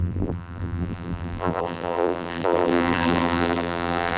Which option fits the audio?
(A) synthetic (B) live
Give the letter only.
A